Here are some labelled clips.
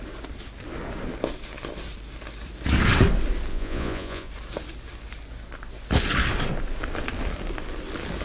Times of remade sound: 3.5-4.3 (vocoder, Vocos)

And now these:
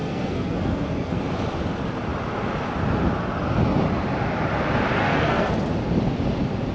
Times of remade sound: 0.0-1.2 (codec, SNAC); 5.0-5.5